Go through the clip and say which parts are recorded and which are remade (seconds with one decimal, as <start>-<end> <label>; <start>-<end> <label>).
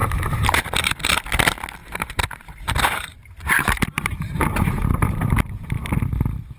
0.0-1.3 remade; 1.3-1.8 recorded; 1.8-5.8 remade; 5.8-6.6 recorded